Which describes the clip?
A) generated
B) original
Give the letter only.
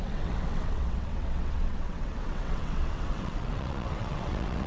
A